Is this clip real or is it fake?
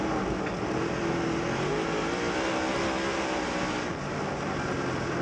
real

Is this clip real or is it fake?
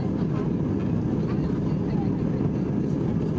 real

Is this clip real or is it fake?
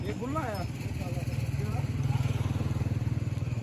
real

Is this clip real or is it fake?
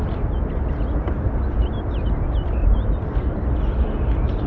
real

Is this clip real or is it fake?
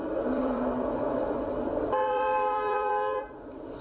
fake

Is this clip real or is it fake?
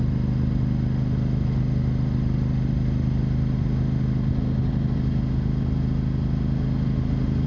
real